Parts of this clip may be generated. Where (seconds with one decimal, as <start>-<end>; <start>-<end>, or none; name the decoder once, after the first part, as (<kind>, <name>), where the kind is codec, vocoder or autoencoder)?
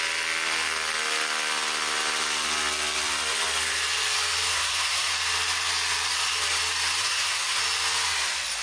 4.5-5.1 (codec, SNAC); 7.0-7.6